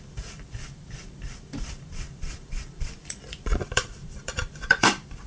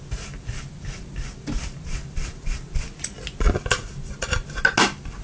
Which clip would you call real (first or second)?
second